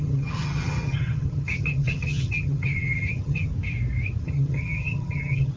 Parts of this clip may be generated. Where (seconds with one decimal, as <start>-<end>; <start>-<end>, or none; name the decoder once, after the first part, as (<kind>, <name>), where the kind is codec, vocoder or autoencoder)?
0.0-3.5 (vocoder, HiFi-GAN); 4.2-5.6